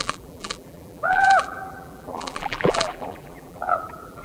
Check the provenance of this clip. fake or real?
fake